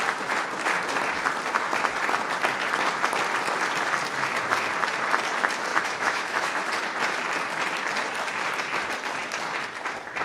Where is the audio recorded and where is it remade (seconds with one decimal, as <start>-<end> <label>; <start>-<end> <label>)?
0.0-5.7 recorded; 5.7-6.7 remade; 6.7-10.2 recorded